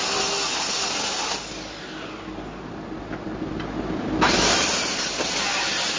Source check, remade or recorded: recorded